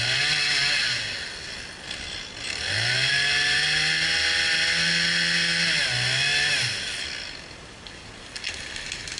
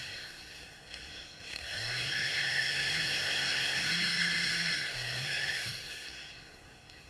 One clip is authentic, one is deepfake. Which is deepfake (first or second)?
second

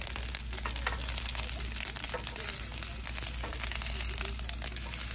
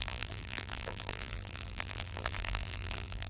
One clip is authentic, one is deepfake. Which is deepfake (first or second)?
second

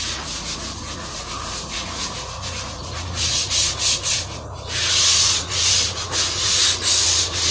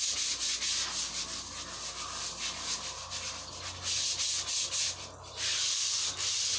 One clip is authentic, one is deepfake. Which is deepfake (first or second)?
first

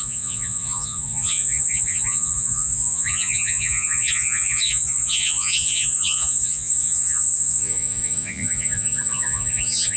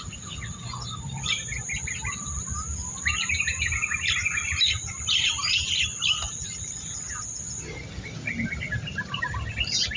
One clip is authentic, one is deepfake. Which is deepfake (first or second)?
first